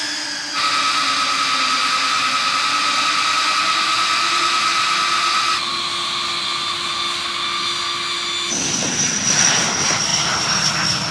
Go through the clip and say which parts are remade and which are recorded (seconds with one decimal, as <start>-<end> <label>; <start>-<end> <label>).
0.0-11.1 recorded